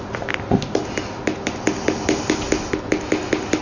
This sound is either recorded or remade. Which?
recorded